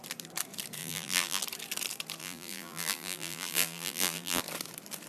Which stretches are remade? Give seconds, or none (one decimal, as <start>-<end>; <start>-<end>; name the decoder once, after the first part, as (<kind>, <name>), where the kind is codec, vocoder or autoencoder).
0.8-1.4 (vocoder, BigVGAN v2); 2.2-4.4